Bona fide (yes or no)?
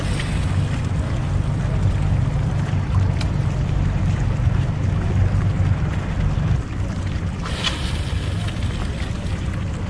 yes